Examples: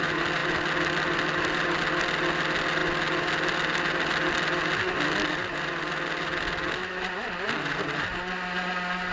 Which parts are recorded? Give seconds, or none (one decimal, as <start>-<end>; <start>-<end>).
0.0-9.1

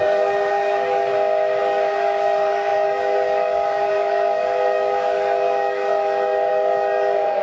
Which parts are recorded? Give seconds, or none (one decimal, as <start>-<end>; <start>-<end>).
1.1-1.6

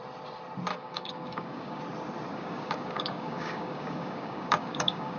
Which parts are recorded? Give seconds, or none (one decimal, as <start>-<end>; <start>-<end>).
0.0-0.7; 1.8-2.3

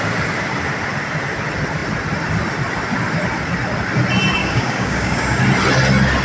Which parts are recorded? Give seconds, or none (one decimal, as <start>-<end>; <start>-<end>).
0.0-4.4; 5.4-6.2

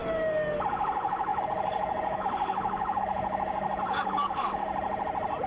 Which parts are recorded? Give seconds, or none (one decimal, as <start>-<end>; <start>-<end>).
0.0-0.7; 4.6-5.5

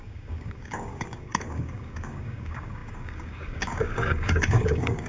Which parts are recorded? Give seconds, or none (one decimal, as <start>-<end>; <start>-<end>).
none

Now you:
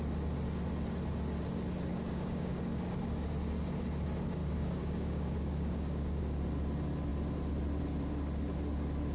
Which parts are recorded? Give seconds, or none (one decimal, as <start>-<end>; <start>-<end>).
0.0-1.9; 2.6-4.4; 6.4-9.1

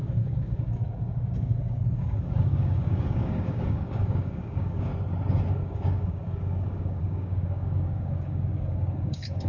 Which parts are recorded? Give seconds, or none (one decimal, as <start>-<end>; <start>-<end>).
4.9-5.5